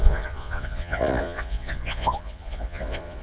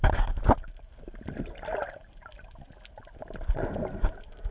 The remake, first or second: first